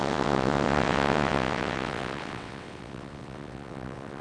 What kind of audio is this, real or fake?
fake